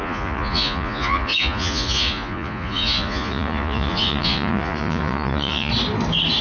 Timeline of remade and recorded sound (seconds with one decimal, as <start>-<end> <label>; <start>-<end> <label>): 0.0-5.7 remade; 5.7-6.4 recorded